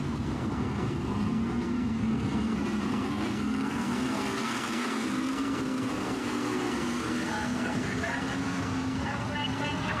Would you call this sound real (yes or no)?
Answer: no